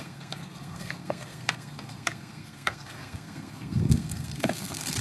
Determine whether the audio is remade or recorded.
remade